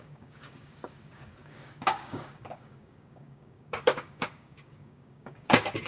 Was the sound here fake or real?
fake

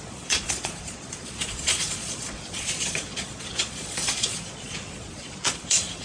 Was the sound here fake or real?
fake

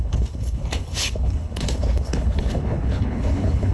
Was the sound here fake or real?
fake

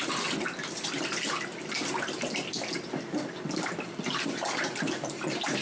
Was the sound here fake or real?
real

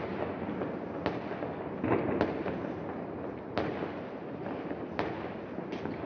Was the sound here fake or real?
real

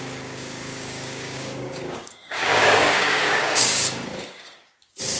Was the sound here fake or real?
fake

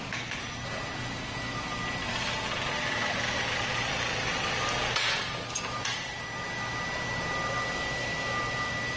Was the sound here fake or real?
real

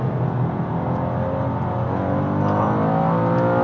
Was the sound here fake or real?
real